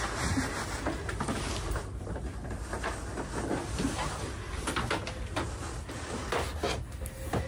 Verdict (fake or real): real